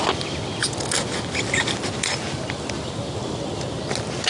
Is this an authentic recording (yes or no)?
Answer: yes